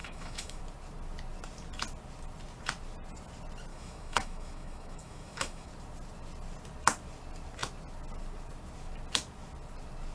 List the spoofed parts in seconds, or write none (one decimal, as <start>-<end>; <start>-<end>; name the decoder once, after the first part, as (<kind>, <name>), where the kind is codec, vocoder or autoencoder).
0.0-0.6 (autoencoder, DAC-VAE); 3.7-5.7